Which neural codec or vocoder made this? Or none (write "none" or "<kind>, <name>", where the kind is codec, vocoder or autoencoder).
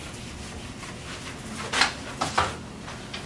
none